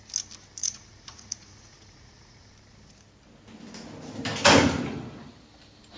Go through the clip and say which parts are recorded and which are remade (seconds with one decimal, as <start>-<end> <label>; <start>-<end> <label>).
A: 0.0-0.6 recorded; 0.6-2.5 remade; 2.5-6.0 recorded